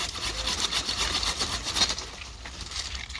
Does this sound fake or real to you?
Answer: real